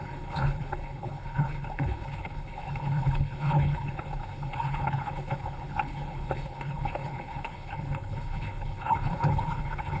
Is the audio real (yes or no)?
no